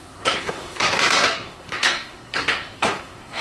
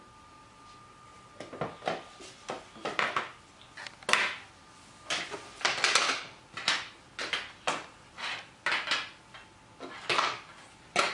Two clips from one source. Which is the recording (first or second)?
second